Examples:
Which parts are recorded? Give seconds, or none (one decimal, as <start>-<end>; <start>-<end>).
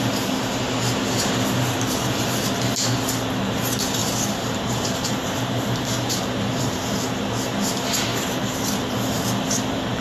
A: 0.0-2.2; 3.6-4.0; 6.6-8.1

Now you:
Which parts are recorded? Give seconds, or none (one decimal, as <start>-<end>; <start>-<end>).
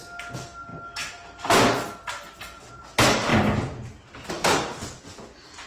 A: 0.0-5.7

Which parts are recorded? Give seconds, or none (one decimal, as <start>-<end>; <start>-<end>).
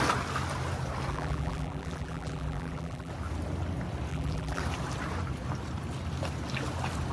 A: 0.0-1.1; 3.1-4.1; 4.6-7.1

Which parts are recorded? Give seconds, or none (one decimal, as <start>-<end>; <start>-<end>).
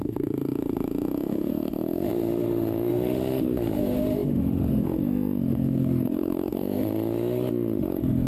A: none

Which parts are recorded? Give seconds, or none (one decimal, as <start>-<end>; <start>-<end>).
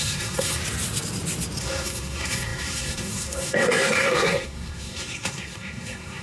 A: 0.6-1.6